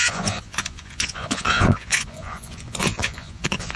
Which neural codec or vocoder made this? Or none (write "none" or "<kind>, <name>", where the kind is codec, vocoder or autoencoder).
vocoder, Vocos